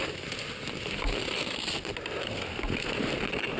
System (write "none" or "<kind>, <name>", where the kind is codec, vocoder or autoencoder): none